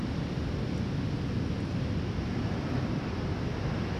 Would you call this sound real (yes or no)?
yes